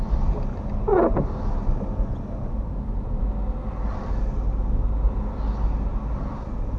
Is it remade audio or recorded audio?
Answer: recorded